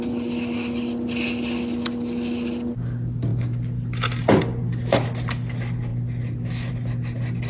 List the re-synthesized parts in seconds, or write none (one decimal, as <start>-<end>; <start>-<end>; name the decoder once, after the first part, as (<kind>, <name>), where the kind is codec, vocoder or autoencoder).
none